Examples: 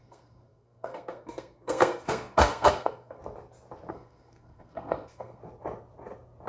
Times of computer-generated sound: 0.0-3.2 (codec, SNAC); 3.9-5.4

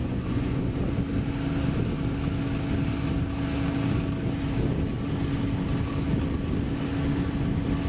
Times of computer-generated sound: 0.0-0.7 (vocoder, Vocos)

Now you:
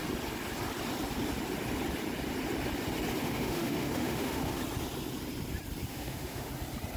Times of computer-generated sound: 3.2-4.6 (autoencoder, DAC-VAE); 5.9-6.5

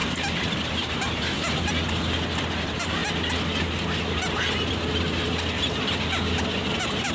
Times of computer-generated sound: 0.0-1.7 (vocoder, BigVGAN v2)